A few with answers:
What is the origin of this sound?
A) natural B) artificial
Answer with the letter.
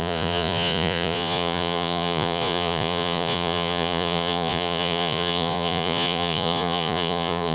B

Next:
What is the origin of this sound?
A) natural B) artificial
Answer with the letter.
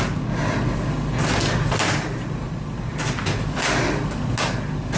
A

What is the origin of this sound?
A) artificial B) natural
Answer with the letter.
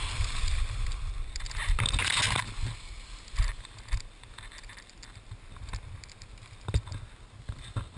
B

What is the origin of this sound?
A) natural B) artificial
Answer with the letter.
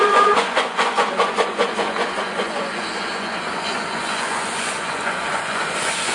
B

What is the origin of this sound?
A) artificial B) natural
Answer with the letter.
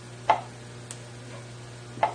B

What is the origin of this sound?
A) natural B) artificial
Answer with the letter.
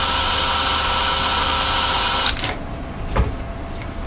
A